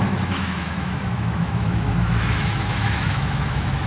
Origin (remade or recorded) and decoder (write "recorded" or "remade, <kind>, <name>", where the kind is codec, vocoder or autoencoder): remade, autoencoder, DAC-VAE